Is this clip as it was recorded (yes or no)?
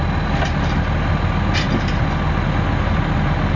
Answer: yes